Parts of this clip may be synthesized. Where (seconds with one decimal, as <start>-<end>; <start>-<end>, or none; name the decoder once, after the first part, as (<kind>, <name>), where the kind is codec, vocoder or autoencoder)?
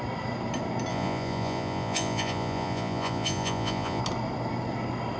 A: 0.9-4.0 (vocoder, Vocos)